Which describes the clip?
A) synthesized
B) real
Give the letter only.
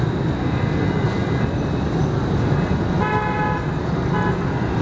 B